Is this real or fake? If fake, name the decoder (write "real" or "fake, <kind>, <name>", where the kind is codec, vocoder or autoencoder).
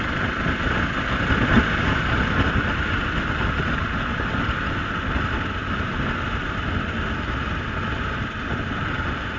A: real